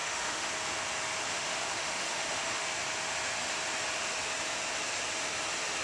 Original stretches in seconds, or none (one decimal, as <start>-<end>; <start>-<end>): 0.5-1.3; 2.6-5.8